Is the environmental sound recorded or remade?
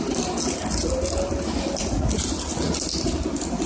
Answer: recorded